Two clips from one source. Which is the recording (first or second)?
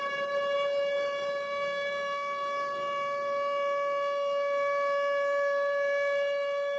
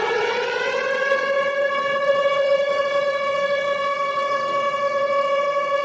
first